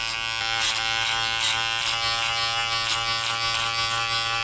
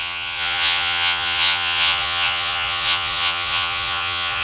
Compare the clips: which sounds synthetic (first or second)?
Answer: second